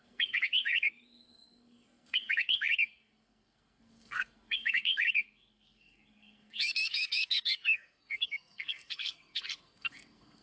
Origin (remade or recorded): remade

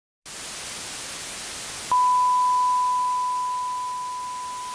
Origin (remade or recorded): recorded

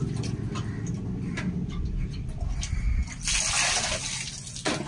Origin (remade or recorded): recorded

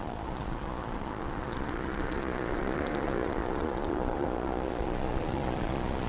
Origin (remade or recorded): remade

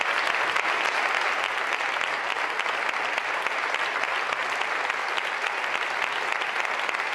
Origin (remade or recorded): recorded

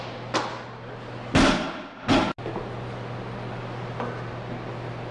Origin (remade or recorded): recorded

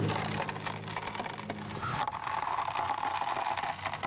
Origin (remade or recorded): recorded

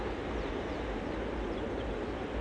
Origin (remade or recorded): recorded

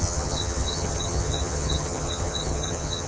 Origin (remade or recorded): remade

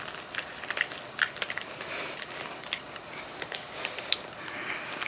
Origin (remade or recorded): recorded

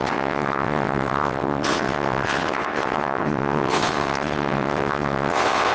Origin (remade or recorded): remade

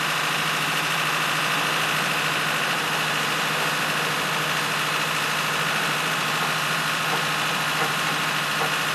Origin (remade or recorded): recorded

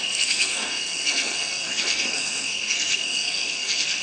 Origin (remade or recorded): remade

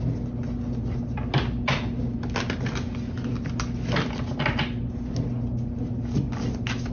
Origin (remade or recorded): recorded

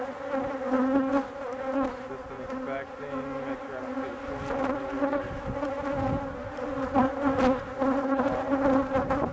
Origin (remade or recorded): recorded